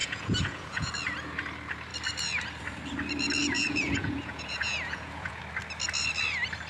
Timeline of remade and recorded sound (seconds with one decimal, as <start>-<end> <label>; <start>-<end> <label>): 0.0-0.9 remade; 0.9-3.4 recorded; 3.4-5.4 remade; 5.4-6.7 recorded

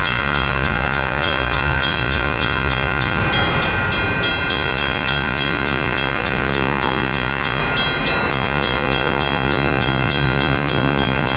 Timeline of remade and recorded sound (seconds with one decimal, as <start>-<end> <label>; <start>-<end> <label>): 0.0-3.2 remade; 3.2-4.5 recorded; 4.5-7.6 remade; 7.6-8.3 recorded; 8.3-11.4 remade

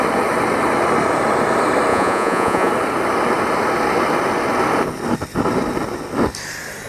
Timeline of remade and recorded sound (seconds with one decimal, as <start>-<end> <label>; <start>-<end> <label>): 0.0-1.9 recorded; 1.9-2.7 remade; 2.7-6.9 recorded

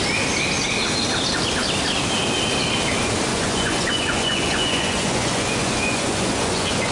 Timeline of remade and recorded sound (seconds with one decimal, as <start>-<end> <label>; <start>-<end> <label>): 0.0-3.3 recorded; 3.3-6.9 remade

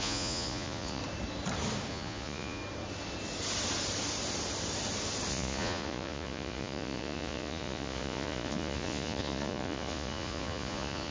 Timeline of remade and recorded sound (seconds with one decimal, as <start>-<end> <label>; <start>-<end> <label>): 0.0-1.0 remade; 1.0-1.9 recorded; 1.9-2.6 remade; 2.6-5.3 recorded; 5.3-11.1 remade

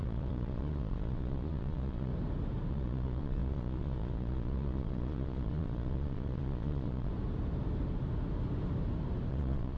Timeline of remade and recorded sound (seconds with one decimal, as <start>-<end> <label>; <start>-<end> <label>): 0.0-2.1 remade; 2.1-2.7 recorded; 2.7-7.1 remade; 7.1-9.3 recorded; 9.3-9.8 remade